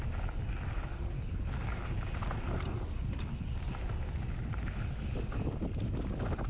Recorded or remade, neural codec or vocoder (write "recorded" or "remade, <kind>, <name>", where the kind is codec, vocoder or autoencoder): recorded